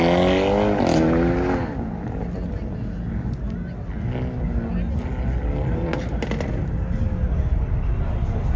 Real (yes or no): yes